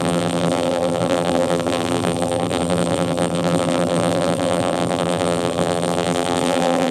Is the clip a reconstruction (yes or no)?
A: yes